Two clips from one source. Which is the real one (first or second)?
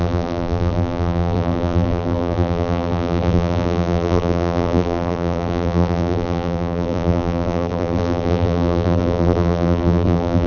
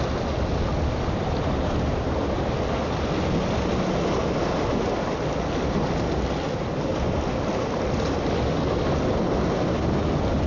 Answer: second